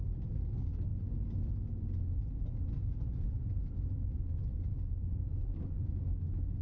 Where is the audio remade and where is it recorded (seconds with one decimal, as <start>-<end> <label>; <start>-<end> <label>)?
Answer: 0.0-2.8 recorded; 2.8-5.9 remade; 5.9-6.6 recorded